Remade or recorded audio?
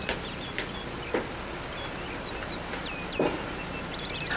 remade